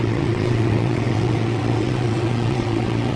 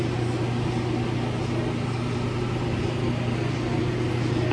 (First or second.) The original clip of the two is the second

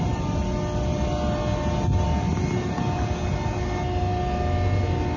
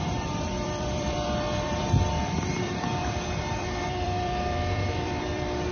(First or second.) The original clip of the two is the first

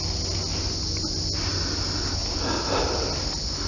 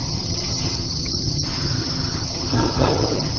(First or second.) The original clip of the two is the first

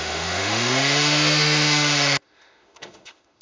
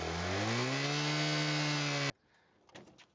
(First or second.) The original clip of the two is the second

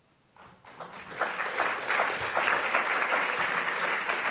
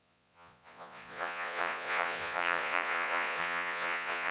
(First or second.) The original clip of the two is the first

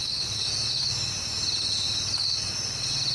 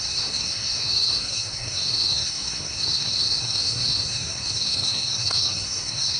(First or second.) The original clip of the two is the first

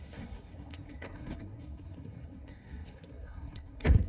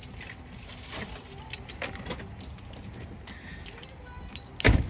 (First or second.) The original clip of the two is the second